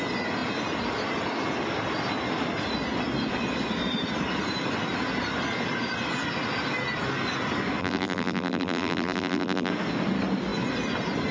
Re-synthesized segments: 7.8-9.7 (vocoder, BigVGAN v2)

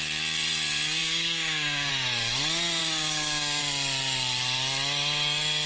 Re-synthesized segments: 1.0-1.9 (codec, DAC); 2.8-3.6

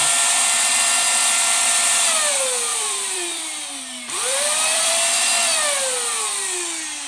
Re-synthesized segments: 2.7-4.9 (vocoder, BigVGAN v2)

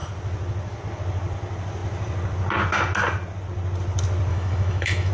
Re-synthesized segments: 4.3-5.1 (autoencoder, DAC-VAE)

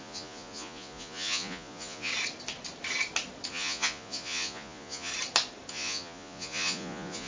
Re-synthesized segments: 0.0-2.1 (vocoder, Vocos); 3.5-5.1; 5.7-7.3